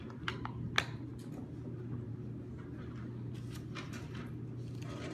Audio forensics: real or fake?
real